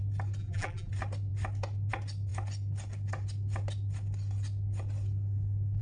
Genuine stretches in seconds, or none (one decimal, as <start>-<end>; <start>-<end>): 0.0-0.4; 0.9-5.8